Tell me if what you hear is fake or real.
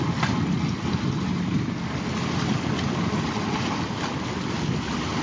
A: real